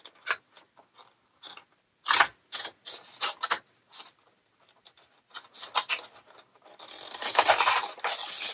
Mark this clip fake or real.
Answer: real